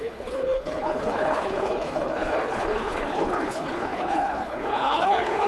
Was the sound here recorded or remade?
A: remade